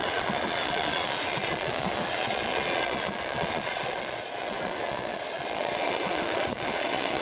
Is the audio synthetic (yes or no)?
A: yes